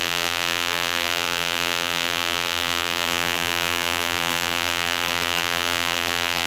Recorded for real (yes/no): no